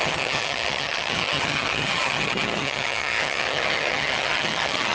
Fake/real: fake